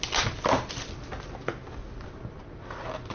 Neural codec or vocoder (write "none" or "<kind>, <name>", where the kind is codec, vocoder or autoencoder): none